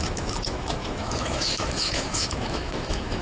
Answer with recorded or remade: remade